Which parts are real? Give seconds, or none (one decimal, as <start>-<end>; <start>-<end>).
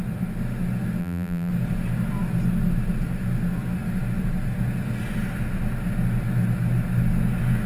0.0-1.0; 1.5-7.7